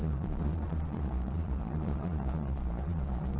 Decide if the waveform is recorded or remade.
remade